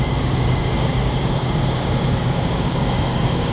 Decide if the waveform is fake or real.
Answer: fake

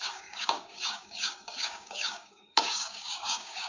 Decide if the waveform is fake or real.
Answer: fake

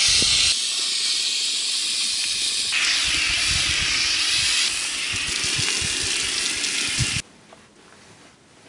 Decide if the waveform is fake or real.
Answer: real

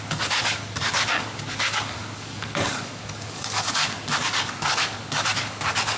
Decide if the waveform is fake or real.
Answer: fake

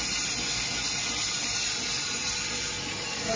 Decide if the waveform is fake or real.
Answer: real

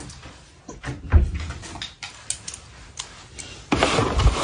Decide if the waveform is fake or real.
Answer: real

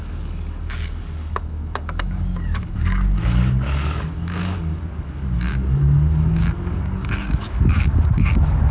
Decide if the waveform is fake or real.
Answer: fake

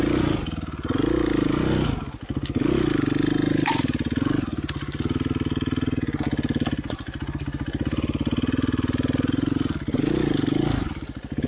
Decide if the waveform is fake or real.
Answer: real